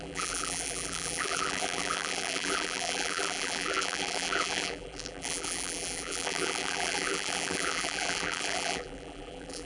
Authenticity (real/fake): fake